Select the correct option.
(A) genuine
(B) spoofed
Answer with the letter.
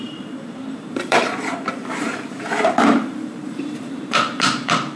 B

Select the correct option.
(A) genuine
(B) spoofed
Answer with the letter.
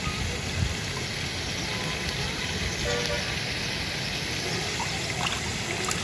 A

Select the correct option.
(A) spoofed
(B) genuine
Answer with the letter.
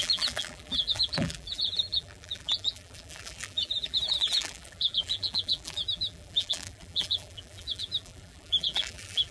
A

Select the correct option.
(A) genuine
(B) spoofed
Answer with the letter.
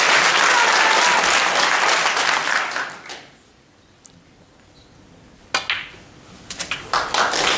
A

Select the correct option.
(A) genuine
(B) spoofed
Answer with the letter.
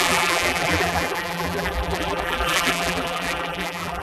B